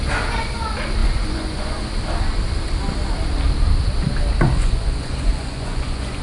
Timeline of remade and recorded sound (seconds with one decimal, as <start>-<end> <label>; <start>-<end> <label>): 0.0-1.0 recorded; 1.0-1.8 remade; 1.8-4.6 recorded; 4.6-6.2 remade